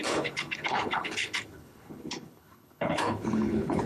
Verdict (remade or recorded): remade